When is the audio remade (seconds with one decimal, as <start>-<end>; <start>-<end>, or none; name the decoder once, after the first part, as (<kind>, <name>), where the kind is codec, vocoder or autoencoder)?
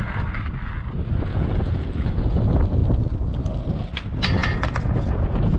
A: 1.3-2.4 (vocoder, Vocos); 4.4-5.6